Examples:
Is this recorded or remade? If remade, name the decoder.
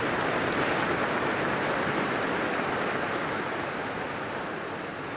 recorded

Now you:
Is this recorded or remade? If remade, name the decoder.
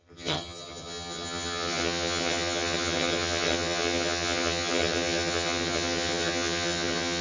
remade, vocoder, HiFi-GAN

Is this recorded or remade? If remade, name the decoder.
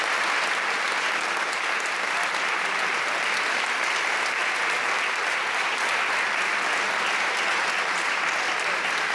recorded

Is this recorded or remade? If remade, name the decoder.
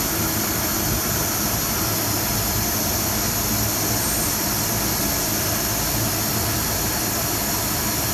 recorded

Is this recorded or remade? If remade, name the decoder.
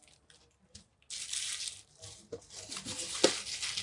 recorded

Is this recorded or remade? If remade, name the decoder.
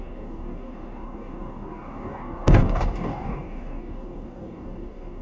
remade, codec, DAC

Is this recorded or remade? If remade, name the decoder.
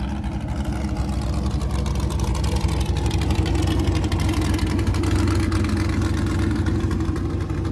recorded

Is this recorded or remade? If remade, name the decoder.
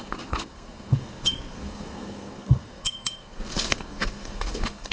remade, codec, SNAC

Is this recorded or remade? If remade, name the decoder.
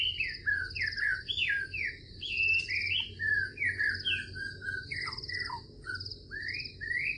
recorded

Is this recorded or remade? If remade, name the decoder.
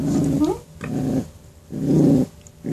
recorded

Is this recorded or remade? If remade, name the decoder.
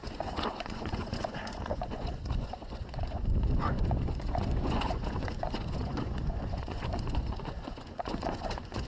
remade, vocoder, Vocos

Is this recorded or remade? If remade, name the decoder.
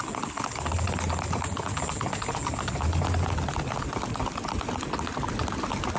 recorded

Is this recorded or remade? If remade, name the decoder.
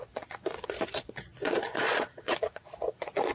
remade, vocoder, Vocos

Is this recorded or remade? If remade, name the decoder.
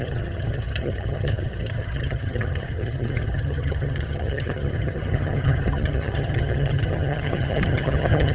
remade, vocoder, HiFi-GAN